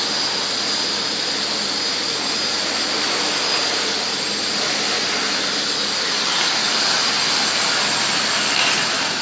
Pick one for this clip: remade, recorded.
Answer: recorded